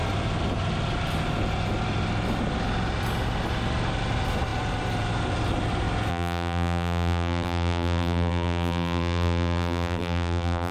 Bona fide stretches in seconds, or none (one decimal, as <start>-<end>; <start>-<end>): 0.0-6.1